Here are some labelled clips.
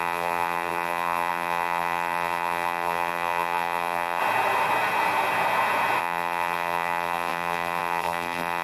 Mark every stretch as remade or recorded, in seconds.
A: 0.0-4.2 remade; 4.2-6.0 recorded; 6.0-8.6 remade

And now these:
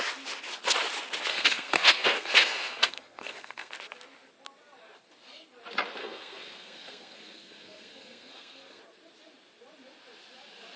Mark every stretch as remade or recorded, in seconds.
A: 0.0-1.3 recorded; 1.3-3.7 remade; 3.7-6.0 recorded; 6.0-8.8 remade; 8.8-10.8 recorded